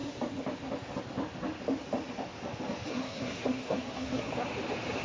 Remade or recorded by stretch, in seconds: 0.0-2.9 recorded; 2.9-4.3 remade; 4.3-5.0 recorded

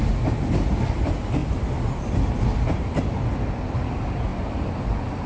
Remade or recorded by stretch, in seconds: 0.0-5.3 recorded

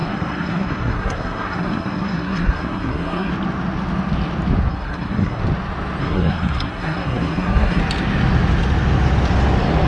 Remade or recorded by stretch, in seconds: 0.0-3.3 remade; 3.3-4.7 recorded; 4.7-5.4 remade; 5.4-6.0 recorded; 6.0-7.8 remade; 7.8-9.9 recorded

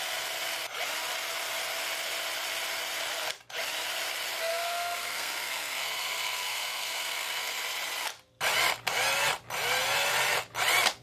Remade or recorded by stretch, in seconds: 0.0-4.5 recorded; 4.5-7.6 remade; 7.6-11.0 recorded